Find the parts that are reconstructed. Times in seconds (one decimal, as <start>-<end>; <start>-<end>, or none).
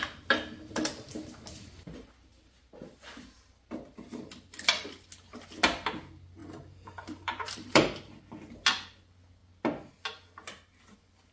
2.3-3.1; 6.4-8.2